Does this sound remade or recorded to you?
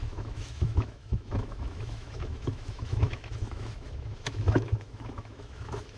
remade